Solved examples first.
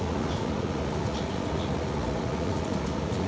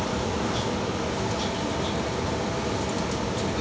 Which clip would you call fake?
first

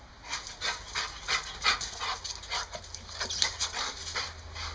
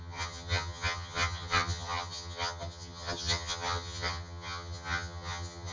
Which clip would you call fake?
second